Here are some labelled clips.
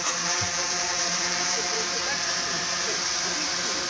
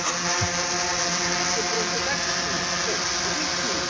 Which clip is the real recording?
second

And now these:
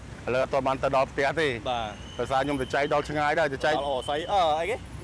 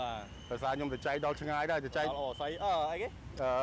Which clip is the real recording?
second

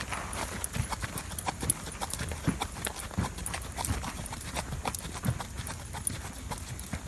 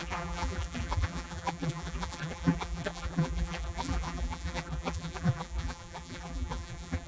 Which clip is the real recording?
first